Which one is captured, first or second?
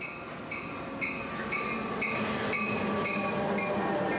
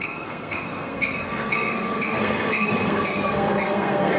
first